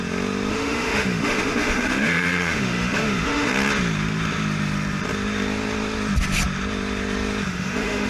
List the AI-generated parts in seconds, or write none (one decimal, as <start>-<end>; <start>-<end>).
0.5-3.5; 7.5-8.1